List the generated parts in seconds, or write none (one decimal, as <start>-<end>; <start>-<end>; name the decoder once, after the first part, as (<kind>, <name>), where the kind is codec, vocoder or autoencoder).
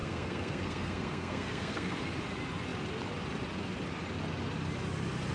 0.0-2.0 (codec, SNAC)